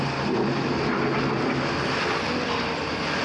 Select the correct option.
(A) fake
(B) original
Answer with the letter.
B